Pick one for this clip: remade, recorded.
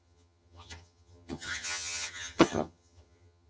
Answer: remade